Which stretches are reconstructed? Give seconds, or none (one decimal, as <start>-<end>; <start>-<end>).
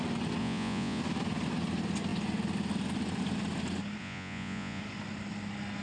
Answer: 0.4-1.0; 4.0-4.8